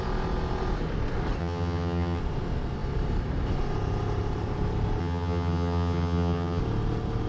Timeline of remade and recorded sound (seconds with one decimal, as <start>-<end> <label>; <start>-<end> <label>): 0.0-1.4 recorded; 1.4-2.2 remade; 2.2-5.0 recorded; 5.0-6.6 remade; 6.6-7.3 recorded